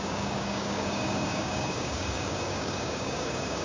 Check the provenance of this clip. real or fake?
fake